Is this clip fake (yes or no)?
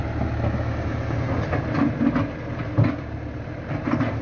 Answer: no